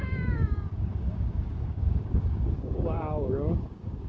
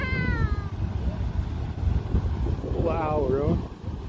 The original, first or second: second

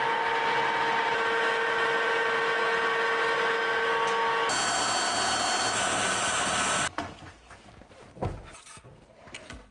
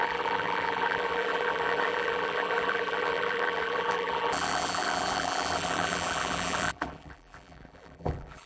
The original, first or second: first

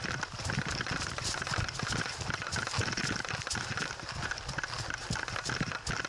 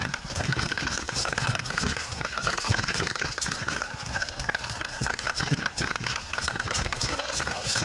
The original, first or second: first